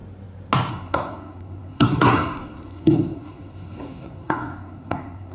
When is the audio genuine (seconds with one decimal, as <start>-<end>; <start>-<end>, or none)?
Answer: 0.0-0.7